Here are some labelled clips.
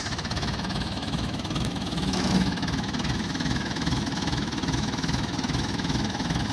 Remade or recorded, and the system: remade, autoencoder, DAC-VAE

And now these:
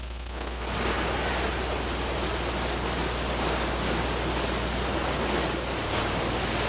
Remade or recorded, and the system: recorded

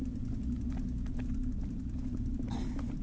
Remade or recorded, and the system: recorded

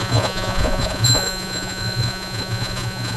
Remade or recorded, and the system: remade, vocoder, Vocos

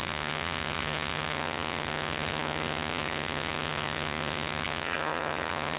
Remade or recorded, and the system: remade, vocoder, HiFi-GAN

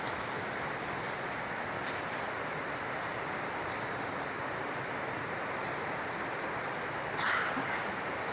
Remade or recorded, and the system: remade, vocoder, BigVGAN v2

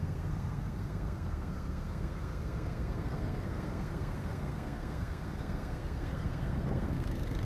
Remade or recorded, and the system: remade, codec, SNAC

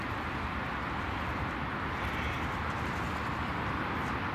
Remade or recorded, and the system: recorded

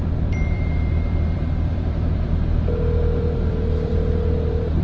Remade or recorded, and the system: remade, vocoder, BigVGAN v2